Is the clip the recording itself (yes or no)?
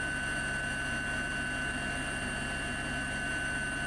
yes